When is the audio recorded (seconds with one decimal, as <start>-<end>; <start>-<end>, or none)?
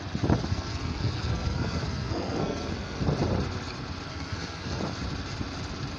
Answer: 0.0-0.5; 3.0-4.1; 4.8-6.0